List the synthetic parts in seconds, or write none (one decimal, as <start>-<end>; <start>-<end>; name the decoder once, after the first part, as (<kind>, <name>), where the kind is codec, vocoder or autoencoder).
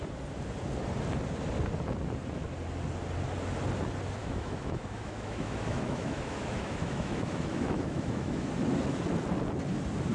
4.2-8.5 (autoencoder, DAC-VAE)